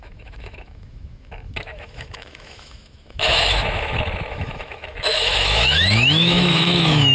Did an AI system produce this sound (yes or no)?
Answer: yes